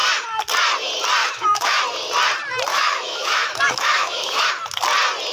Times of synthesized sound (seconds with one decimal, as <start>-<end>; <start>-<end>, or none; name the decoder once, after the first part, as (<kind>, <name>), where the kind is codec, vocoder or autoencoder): 1.2-1.8 (autoencoder, DAC-VAE); 2.7-4.5